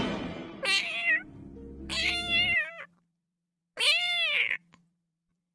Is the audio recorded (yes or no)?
yes